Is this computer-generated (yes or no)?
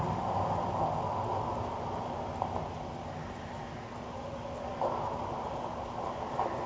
no